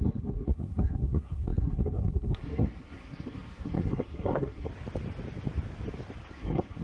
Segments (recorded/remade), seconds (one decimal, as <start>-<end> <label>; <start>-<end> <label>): 0.0-4.7 remade; 4.7-6.3 recorded; 6.3-6.8 remade